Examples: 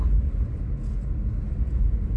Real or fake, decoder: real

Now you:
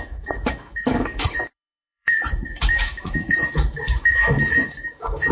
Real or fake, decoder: fake, autoencoder, DAC-VAE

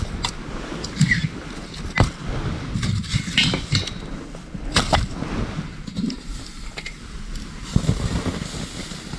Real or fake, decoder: real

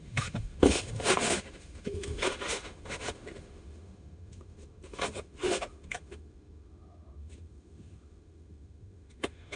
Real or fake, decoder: fake, autoencoder, DAC-VAE